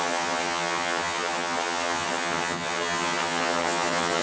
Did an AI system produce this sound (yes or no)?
yes